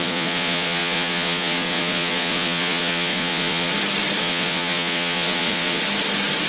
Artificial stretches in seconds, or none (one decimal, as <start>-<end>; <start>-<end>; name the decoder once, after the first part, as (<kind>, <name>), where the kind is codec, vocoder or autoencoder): 0.0-3.7 (vocoder, Vocos); 4.2-5.8